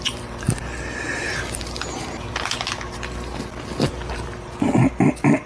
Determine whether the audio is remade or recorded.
recorded